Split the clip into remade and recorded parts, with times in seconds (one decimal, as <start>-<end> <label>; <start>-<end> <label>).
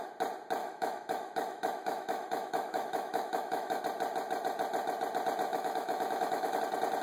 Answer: 0.0-0.6 recorded; 0.6-3.8 remade; 3.8-5.5 recorded; 5.5-6.6 remade; 6.6-7.0 recorded